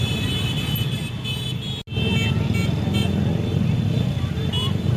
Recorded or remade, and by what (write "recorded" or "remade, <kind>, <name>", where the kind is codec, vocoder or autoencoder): recorded